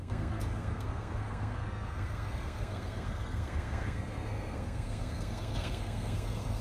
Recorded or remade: remade